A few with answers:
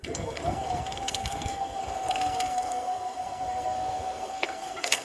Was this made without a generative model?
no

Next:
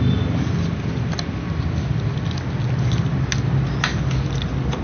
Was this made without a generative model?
yes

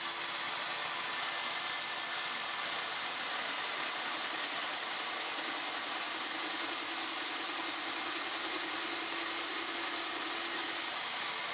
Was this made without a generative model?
yes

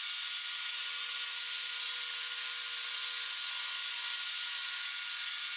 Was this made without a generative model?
yes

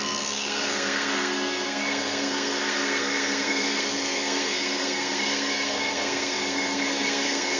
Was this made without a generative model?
no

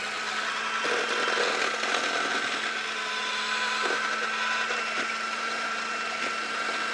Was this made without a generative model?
yes